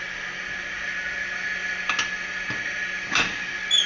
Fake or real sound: real